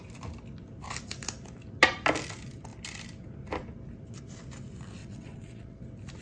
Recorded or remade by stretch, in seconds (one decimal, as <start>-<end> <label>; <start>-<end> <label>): 0.0-5.0 recorded; 5.0-5.8 remade; 5.8-6.2 recorded